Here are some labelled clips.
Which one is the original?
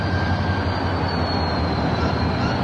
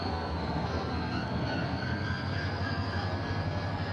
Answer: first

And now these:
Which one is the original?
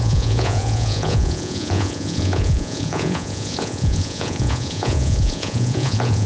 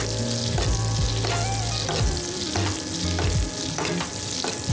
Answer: second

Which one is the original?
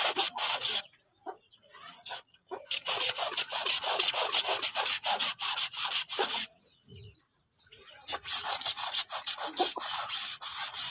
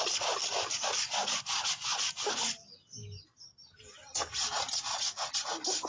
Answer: second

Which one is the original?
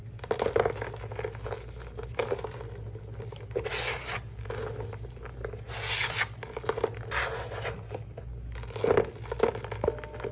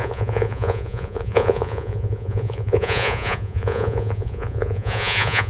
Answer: first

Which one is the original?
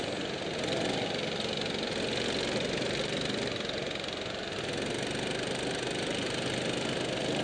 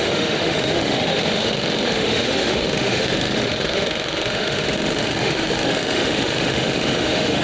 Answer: first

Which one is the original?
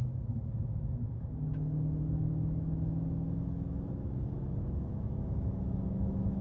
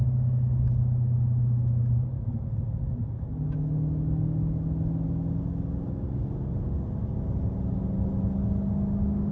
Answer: second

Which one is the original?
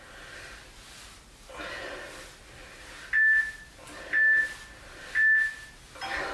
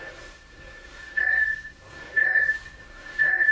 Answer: first